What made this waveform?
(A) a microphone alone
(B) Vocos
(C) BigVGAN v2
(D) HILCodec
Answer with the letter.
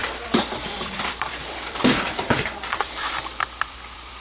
C